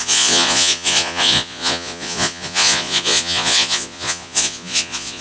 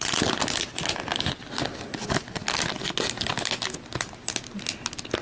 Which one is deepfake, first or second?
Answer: first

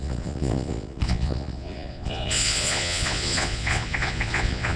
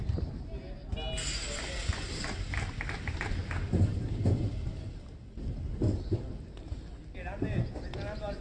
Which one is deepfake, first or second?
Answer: first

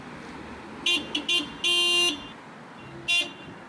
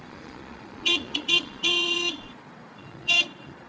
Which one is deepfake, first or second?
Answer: second